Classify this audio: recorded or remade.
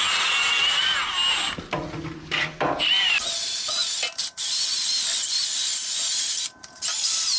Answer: recorded